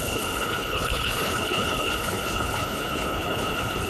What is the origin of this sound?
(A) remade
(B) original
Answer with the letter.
A